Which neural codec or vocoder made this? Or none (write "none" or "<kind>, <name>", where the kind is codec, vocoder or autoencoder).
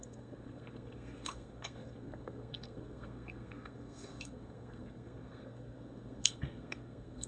codec, SNAC